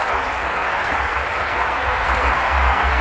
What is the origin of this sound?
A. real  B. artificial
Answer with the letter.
B